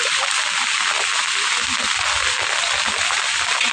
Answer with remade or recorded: recorded